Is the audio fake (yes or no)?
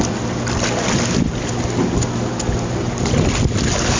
no